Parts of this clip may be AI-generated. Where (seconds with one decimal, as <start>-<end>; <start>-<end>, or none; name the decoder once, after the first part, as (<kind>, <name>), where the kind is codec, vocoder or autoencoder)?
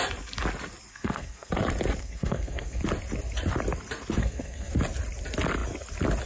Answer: 0.9-1.5 (codec, SNAC); 2.0-2.8; 4.2-4.7